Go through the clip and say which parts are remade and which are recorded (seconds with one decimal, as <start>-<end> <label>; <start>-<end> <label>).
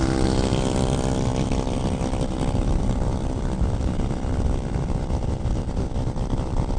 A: 0.0-6.8 recorded